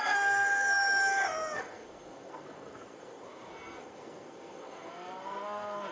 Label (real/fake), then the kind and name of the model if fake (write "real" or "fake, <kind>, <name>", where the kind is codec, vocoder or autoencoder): fake, codec, SNAC